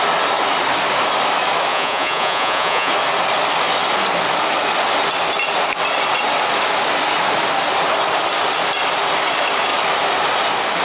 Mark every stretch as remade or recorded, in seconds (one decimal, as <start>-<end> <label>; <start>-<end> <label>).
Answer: 0.0-1.7 recorded; 1.7-2.9 remade; 2.9-10.8 recorded